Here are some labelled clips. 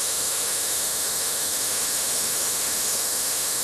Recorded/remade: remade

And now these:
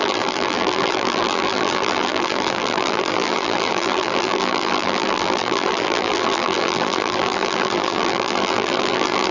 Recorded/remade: remade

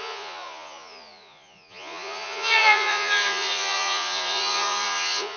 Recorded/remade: remade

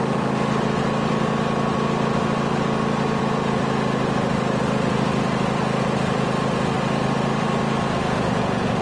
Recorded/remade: recorded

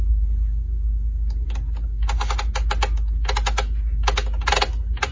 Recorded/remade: recorded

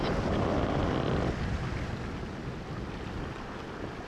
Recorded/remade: recorded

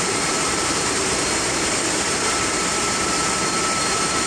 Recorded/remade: remade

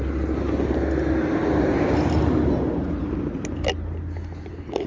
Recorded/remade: recorded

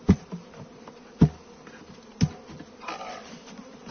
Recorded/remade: recorded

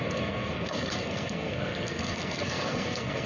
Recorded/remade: remade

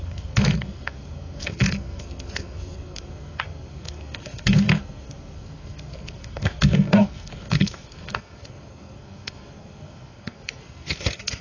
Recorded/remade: remade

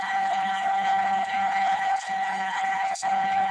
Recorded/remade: remade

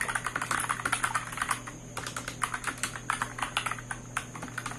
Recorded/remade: recorded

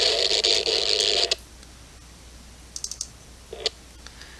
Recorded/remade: recorded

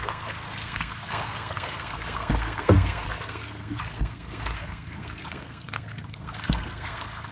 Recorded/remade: remade